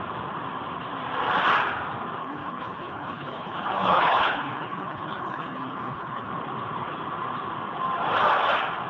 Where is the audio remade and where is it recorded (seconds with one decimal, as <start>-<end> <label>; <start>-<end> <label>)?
0.0-2.2 recorded; 2.2-6.3 remade; 6.3-8.9 recorded